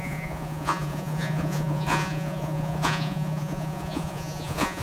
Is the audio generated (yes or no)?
yes